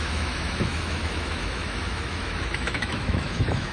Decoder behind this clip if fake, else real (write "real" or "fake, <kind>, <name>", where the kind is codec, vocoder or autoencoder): fake, autoencoder, DAC-VAE